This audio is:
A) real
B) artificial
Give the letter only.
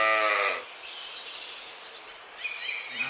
A